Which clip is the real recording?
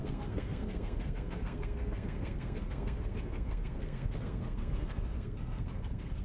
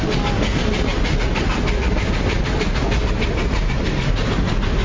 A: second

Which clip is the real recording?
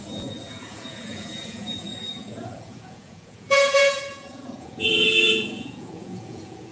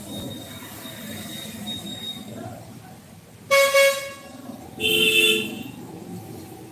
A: second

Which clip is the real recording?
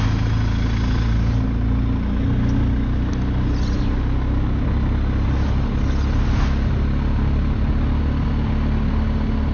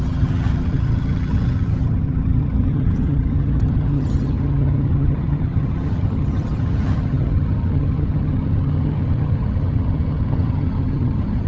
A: first